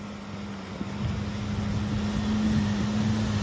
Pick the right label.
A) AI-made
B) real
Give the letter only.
B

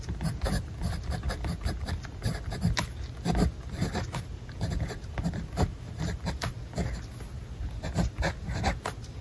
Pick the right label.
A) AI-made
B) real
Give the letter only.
B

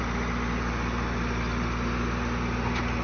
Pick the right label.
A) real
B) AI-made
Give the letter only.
A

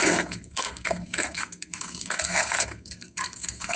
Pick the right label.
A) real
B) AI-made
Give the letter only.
B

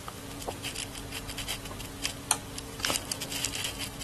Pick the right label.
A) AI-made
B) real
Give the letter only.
B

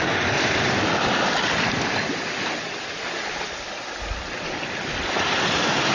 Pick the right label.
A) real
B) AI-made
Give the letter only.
A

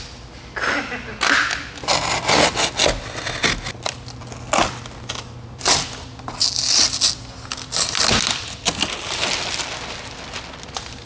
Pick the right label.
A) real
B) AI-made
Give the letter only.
A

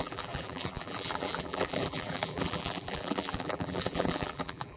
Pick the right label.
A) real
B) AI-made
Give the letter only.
B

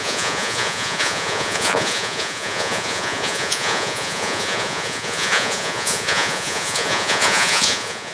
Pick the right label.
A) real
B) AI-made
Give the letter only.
B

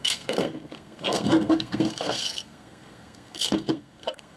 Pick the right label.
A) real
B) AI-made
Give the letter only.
B